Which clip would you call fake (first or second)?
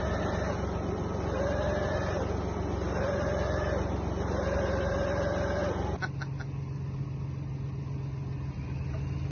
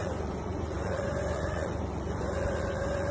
second